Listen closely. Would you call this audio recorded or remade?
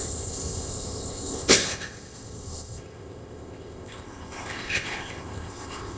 remade